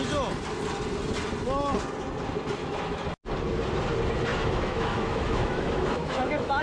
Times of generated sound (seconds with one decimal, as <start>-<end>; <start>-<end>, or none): 2.6-3.1; 4.3-6.6